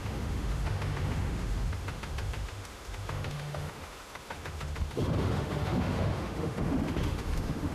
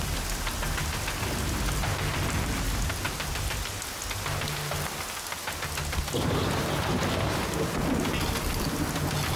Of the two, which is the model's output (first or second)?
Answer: first